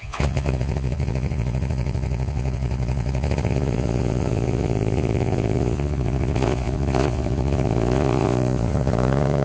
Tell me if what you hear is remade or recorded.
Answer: remade